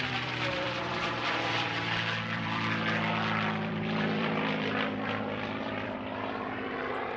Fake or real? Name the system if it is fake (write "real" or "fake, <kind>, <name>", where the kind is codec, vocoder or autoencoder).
fake, vocoder, BigVGAN v2